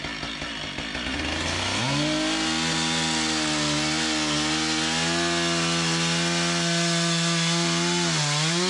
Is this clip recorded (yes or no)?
yes